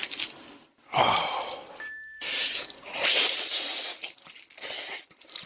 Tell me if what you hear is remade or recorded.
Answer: recorded